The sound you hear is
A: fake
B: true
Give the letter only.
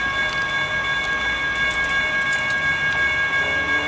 B